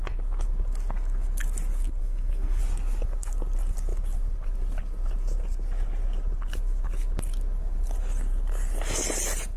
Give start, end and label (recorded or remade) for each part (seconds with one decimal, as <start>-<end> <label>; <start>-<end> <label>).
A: 0.0-2.0 recorded; 2.0-2.6 remade; 2.6-9.6 recorded